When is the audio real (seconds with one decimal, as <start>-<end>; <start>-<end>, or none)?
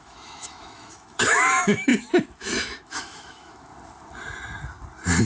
3.7-5.2